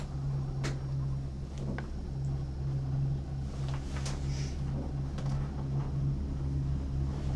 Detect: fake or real real